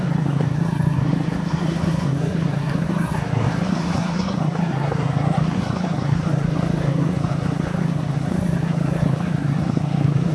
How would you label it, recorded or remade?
remade